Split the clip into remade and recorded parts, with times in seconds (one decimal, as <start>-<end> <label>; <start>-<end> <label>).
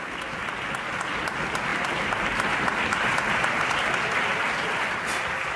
0.0-5.6 recorded